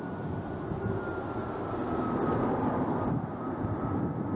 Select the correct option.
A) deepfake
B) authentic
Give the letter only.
B